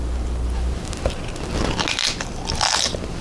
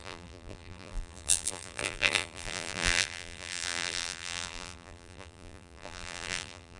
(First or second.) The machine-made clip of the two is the second